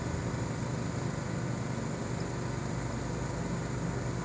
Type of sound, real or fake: real